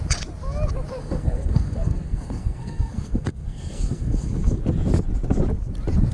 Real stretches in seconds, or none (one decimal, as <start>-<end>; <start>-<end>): 0.0-1.0; 4.6-6.1